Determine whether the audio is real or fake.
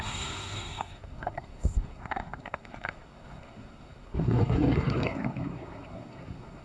fake